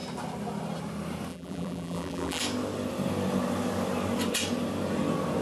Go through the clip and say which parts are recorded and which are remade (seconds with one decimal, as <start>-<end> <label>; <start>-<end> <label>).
0.0-1.3 recorded; 1.3-2.4 remade; 2.4-5.4 recorded